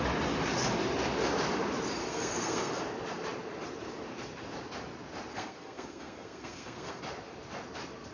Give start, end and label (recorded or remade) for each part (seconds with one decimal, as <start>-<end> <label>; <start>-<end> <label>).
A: 0.0-2.0 recorded; 2.0-2.8 remade; 2.8-5.3 recorded; 5.3-7.0 remade; 7.0-8.1 recorded